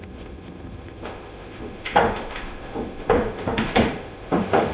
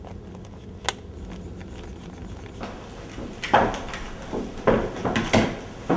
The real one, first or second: second